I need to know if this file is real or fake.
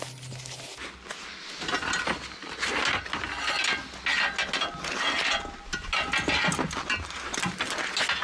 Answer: real